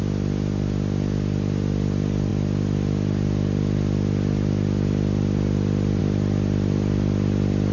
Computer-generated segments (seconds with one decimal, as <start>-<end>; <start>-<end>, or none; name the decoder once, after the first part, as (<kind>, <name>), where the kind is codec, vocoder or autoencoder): none